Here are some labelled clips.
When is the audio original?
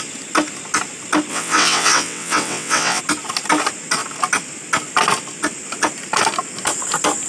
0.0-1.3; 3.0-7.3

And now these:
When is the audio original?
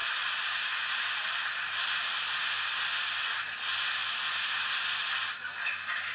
0.0-6.1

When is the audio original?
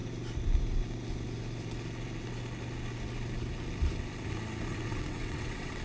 0.0-4.7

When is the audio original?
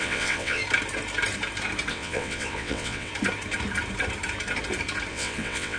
0.6-1.9; 3.1-5.1